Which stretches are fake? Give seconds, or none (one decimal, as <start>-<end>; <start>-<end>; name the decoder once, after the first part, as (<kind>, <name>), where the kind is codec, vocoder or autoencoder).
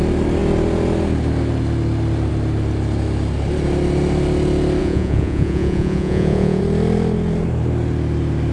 4.8-6.6 (vocoder, Vocos)